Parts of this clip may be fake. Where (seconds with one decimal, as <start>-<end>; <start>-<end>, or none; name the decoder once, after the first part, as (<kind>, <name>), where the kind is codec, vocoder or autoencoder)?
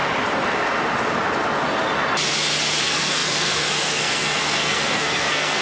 2.8-5.6 (codec, SNAC)